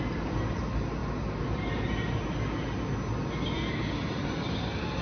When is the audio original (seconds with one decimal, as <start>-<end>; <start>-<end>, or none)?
0.0-5.0